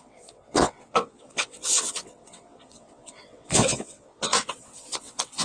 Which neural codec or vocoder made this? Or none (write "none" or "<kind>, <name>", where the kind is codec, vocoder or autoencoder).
vocoder, WaveNeXt